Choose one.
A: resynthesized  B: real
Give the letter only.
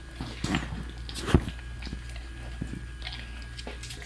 B